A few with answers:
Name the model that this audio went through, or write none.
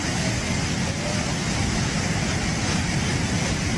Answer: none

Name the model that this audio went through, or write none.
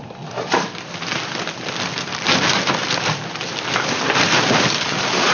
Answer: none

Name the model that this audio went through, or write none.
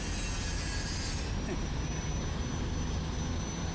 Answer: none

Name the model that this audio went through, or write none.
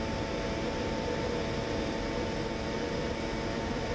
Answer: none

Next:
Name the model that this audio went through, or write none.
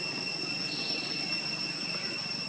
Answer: none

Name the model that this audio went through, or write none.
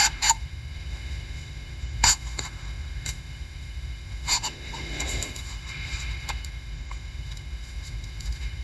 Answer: autoencoder, DAC-VAE